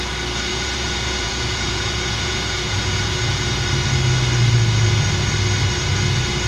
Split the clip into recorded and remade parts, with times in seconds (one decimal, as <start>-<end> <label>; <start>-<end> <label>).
0.0-0.5 recorded; 0.5-3.6 remade; 3.6-6.5 recorded